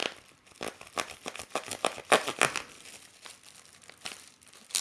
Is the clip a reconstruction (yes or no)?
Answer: no